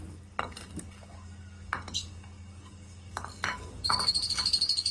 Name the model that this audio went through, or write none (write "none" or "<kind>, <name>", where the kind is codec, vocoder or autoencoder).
codec, DAC